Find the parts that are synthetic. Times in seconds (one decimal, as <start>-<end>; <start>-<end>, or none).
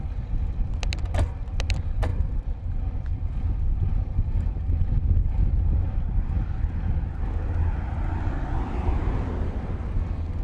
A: none